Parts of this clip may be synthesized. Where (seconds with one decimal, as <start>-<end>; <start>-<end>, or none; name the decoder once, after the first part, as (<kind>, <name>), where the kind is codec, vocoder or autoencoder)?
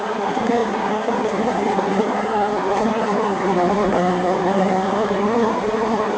0.0-6.2 (codec, SNAC)